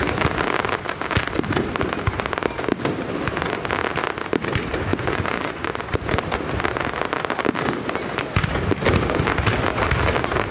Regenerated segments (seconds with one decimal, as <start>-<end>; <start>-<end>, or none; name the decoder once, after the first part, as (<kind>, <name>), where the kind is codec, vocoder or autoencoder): 4.9-5.8 (vocoder, Vocos)